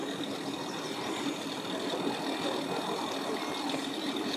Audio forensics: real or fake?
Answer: real